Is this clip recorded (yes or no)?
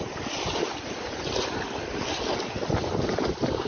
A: yes